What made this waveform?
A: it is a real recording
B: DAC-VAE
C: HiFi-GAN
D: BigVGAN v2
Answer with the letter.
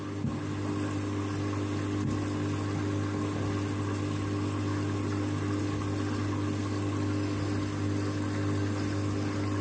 A